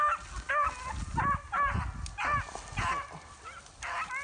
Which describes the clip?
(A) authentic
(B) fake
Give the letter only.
A